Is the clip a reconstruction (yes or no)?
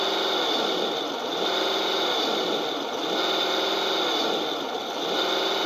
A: no